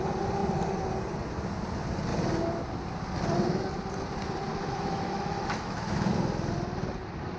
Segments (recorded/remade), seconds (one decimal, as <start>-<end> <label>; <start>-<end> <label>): 0.0-4.5 recorded; 4.5-6.1 remade; 6.1-7.4 recorded